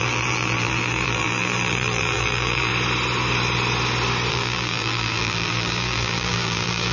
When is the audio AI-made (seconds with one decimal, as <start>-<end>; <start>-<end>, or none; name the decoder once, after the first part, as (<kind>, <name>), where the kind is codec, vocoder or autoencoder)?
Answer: 0.0-2.7 (vocoder, BigVGAN v2); 4.3-6.9